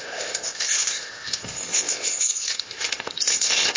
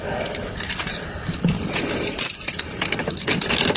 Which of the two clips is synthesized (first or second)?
first